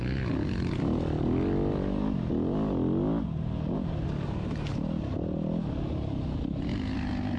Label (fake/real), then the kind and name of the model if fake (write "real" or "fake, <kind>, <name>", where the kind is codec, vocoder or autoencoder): real